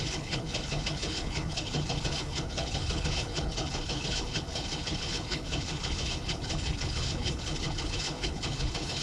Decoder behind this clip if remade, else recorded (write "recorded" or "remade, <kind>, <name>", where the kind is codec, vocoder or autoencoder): remade, codec, HILCodec